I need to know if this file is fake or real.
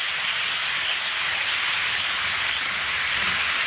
real